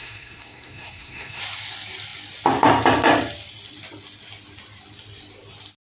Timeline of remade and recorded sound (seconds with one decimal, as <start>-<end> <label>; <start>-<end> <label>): 0.0-1.4 remade; 1.4-5.8 recorded